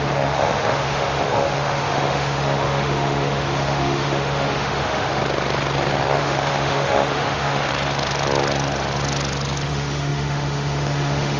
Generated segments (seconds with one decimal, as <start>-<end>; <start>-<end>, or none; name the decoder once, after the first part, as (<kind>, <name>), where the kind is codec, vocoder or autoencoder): 0.0-5.2 (autoencoder, DAC-VAE); 6.2-7.7; 9.7-11.4

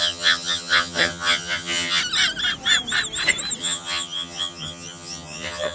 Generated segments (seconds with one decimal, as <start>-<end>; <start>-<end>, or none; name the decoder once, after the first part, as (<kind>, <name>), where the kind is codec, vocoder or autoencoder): 0.0-2.0 (vocoder, HiFi-GAN); 3.6-5.7

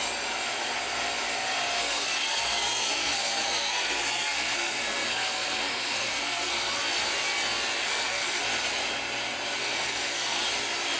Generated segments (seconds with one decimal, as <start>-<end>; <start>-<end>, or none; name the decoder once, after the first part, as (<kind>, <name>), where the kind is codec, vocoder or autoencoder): 1.8-6.8 (codec, SNAC); 7.8-8.4; 9.6-10.4

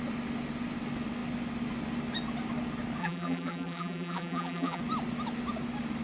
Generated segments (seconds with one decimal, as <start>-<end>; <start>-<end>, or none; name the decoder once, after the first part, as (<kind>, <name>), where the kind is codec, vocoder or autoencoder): 3.0-4.8 (vocoder, BigVGAN v2)

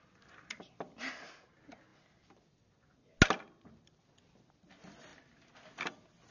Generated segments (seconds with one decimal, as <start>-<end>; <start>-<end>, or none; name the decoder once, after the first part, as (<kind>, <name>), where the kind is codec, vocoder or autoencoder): none

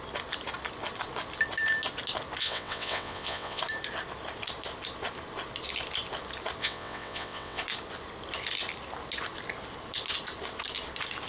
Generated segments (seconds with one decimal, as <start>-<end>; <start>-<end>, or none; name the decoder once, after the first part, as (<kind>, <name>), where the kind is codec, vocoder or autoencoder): 2.4-3.6 (vocoder, WaveNeXt); 6.6-7.6

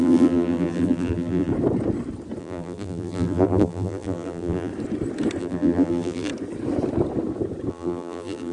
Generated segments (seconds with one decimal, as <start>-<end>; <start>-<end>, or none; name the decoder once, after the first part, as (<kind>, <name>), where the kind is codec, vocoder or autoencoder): 0.0-1.5 (vocoder, BigVGAN v2); 2.4-4.7; 5.4-6.3; 7.7-8.5

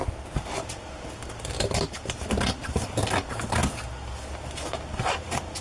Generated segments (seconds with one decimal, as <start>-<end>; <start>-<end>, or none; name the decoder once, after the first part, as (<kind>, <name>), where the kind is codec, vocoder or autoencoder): none